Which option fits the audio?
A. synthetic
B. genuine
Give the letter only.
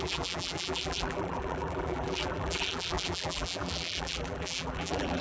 A